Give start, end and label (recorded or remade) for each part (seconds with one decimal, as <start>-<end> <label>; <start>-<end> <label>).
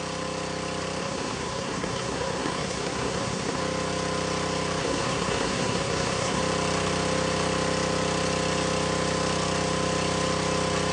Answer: 0.0-1.0 recorded; 1.0-3.6 remade; 3.6-4.8 recorded; 4.8-6.4 remade; 6.4-10.9 recorded